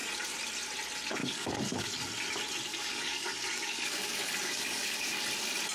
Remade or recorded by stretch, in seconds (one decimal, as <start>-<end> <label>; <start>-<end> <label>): 0.0-1.2 recorded; 1.2-2.0 remade; 2.0-2.7 recorded; 2.7-5.2 remade; 5.2-5.7 recorded